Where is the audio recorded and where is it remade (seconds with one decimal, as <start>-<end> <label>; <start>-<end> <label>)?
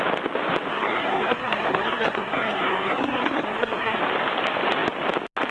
0.0-0.7 recorded; 0.7-4.0 remade; 4.0-5.5 recorded